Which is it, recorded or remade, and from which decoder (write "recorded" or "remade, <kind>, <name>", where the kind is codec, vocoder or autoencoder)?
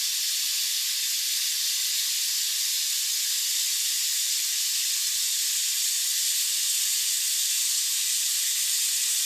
recorded